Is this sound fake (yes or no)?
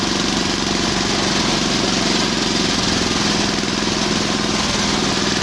no